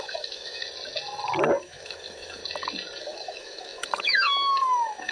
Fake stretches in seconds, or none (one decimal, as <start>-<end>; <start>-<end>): 0.0-0.6; 1.6-2.4; 3.0-5.1